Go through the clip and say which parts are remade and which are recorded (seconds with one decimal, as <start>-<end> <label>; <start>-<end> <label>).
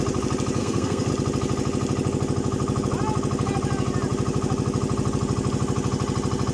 0.0-0.6 recorded; 0.6-1.1 remade; 1.1-6.5 recorded